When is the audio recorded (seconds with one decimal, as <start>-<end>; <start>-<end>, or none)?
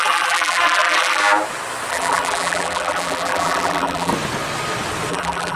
1.2-1.9; 4.1-5.1